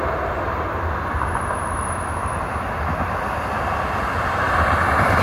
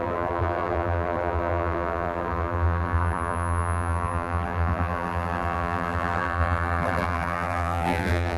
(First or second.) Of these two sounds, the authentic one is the first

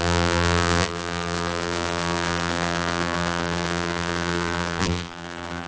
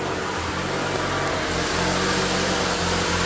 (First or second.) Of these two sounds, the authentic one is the second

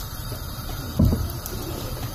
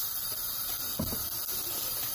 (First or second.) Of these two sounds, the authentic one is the second